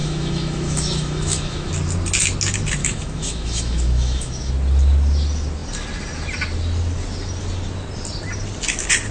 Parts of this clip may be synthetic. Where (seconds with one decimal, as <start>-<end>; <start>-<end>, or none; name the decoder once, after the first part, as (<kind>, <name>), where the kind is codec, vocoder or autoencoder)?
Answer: 0.0-1.7 (autoencoder, DAC-VAE); 2.8-4.5